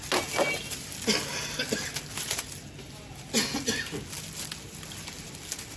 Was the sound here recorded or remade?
recorded